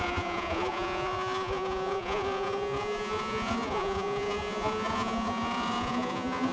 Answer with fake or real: fake